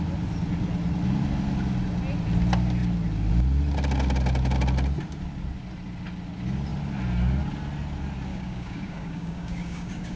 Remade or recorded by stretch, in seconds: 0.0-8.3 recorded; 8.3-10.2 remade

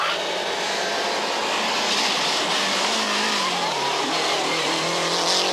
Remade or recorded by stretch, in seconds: 0.0-5.5 recorded

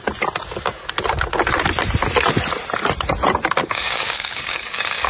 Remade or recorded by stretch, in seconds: 0.0-3.6 recorded; 3.6-5.1 remade

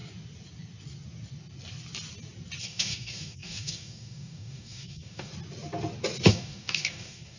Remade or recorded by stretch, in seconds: 0.0-2.6 recorded; 2.6-5.3 remade; 5.3-6.3 recorded; 6.3-7.4 remade

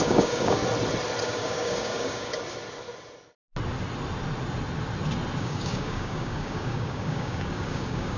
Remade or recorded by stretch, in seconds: 0.0-0.6 remade; 0.6-1.2 recorded; 1.2-2.3 remade; 2.3-5.4 recorded; 5.4-8.2 remade

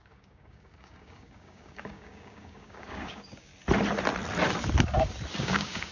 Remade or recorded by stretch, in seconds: 0.0-3.5 remade; 3.5-5.4 recorded; 5.4-5.9 remade

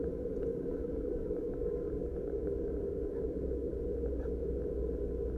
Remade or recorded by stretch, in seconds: 0.0-0.5 recorded; 0.5-3.7 remade; 3.7-5.4 recorded

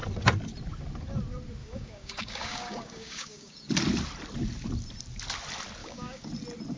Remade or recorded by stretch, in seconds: 0.0-1.6 recorded; 1.6-3.7 remade; 3.7-5.8 recorded; 5.8-6.3 remade; 6.3-6.8 recorded